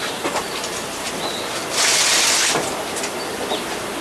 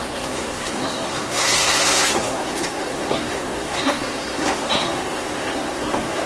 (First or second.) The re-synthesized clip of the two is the second